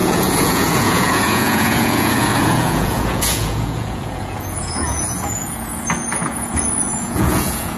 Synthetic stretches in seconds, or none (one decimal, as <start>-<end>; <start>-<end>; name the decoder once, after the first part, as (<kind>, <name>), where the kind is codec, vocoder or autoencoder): 0.0-7.8 (vocoder, Vocos)